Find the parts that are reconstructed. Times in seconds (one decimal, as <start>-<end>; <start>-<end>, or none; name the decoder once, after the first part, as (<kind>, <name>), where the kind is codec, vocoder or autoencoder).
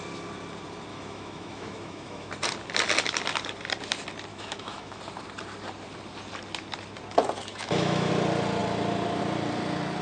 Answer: 0.9-2.3 (autoencoder, DAC-VAE); 4.3-5.0; 7.5-8.1